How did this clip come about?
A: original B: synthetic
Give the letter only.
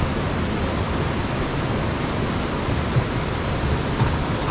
A